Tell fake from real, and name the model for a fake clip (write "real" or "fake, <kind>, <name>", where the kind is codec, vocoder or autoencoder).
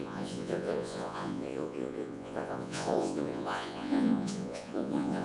fake, vocoder, Vocos